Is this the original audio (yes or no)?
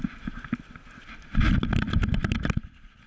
yes